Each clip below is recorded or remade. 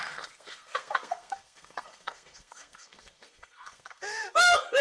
remade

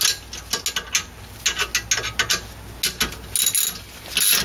recorded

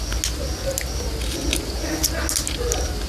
recorded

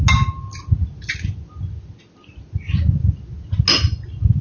recorded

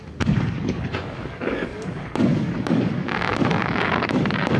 remade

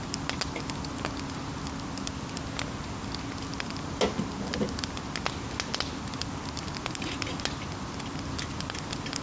recorded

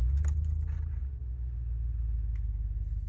recorded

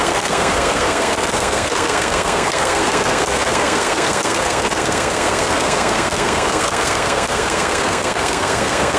remade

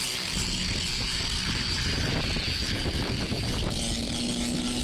recorded